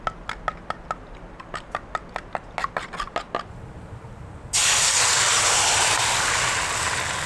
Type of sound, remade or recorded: recorded